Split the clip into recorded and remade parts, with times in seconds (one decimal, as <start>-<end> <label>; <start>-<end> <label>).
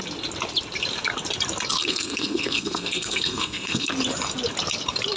0.0-1.8 recorded; 1.8-3.9 remade; 3.9-5.2 recorded